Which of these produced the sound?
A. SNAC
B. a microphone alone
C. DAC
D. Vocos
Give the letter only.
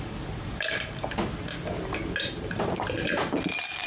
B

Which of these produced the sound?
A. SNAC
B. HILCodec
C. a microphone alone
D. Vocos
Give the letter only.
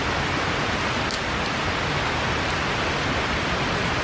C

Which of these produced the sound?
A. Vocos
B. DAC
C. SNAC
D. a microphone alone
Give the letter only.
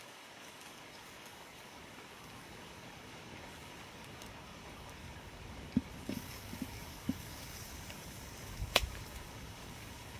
B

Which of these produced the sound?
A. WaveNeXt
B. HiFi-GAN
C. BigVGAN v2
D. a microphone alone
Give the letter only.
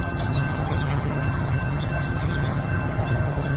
B